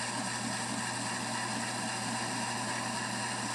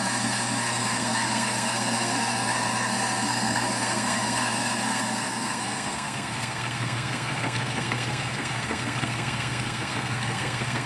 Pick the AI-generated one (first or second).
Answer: second